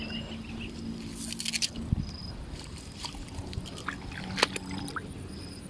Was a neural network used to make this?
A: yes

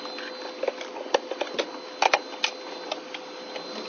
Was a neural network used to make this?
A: no